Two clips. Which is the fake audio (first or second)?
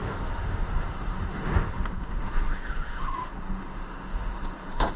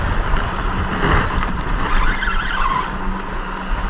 first